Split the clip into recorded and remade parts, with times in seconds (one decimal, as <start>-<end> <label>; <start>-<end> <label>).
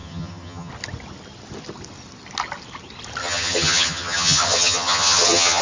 0.0-0.7 remade; 0.7-3.2 recorded; 3.2-5.6 remade